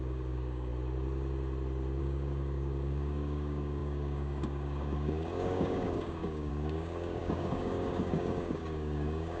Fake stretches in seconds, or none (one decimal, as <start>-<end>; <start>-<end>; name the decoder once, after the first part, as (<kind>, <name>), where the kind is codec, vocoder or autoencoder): 0.0-0.7 (codec, DAC); 2.0-9.4